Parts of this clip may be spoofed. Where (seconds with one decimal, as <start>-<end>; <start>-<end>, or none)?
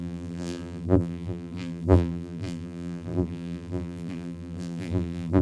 0.0-5.4